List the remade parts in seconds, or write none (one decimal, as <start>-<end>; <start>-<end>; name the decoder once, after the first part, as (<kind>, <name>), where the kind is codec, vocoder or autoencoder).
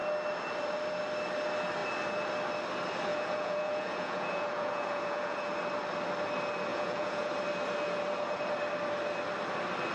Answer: 3.1-5.5 (vocoder, Vocos); 6.7-7.3